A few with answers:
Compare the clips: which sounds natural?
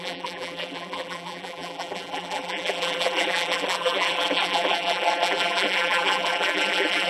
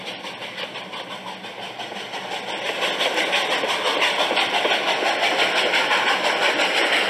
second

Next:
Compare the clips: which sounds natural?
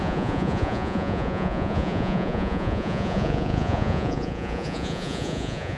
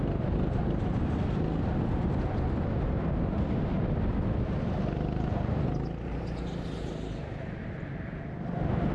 second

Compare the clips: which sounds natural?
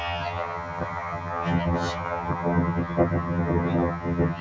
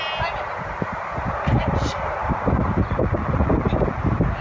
second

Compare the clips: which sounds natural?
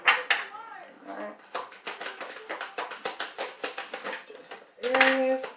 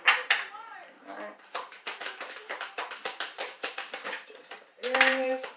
first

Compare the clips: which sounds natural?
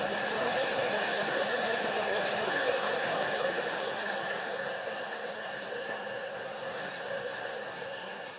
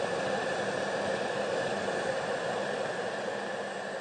second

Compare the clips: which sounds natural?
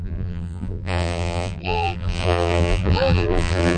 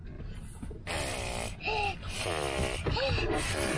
second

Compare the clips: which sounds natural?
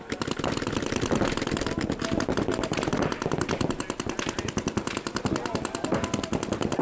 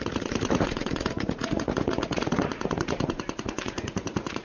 first